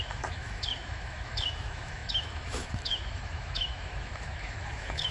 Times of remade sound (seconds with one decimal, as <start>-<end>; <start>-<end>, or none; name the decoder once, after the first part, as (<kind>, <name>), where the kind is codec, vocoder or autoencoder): 0.0-5.1 (autoencoder, DAC-VAE)

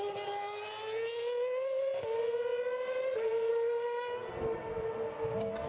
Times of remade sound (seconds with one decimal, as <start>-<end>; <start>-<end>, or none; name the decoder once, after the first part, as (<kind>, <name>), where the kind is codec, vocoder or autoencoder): none

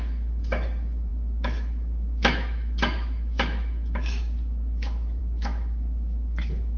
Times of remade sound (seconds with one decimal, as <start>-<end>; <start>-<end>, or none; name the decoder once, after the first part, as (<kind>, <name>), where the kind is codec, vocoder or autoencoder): 0.0-6.8 (autoencoder, DAC-VAE)

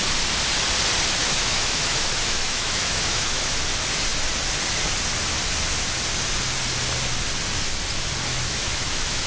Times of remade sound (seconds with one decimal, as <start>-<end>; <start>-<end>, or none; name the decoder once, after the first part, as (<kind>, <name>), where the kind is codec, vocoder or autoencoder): 1.2-3.5 (autoencoder, DAC-VAE); 8.3-9.3

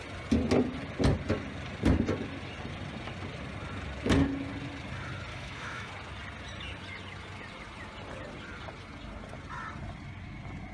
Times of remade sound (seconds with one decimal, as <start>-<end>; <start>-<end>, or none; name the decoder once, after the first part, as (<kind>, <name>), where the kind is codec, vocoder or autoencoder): 5.3-5.9 (autoencoder, DAC-VAE)

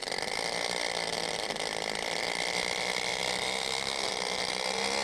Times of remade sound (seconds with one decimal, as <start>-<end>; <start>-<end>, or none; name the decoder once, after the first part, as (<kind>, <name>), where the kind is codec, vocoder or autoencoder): none